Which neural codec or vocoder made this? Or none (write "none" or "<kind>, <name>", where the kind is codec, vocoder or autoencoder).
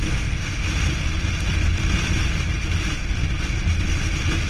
none